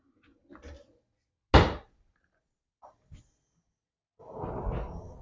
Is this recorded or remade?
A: recorded